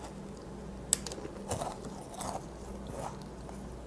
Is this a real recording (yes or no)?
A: yes